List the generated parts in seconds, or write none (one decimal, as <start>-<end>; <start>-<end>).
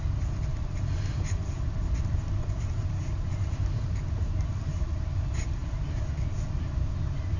0.5-4.7; 5.6-6.7